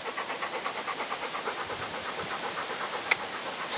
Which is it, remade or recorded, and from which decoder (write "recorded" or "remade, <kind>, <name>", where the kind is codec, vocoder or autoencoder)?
recorded